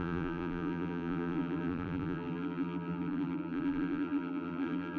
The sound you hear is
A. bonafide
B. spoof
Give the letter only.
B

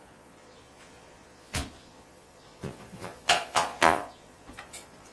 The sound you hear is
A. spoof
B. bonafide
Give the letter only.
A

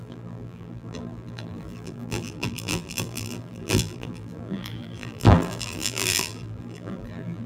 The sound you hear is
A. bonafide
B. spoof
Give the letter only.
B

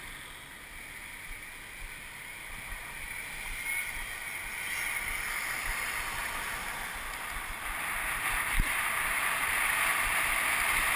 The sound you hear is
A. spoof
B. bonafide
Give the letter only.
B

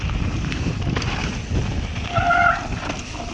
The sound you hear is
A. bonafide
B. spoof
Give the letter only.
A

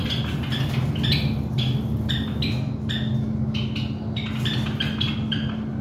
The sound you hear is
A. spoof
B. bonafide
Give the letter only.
B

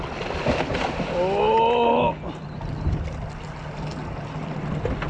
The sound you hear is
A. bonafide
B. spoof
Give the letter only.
A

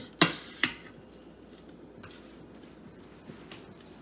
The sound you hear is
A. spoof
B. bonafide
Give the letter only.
B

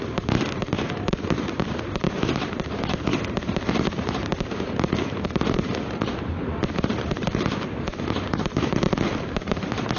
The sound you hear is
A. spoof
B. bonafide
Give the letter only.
A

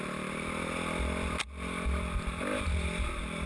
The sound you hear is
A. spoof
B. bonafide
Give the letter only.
B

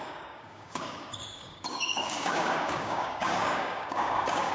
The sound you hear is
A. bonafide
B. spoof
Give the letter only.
B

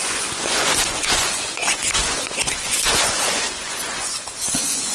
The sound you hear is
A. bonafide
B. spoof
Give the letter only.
B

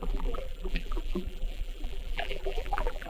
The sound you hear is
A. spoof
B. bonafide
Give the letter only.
A